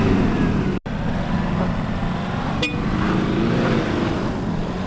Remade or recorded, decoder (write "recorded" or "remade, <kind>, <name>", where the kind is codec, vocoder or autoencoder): recorded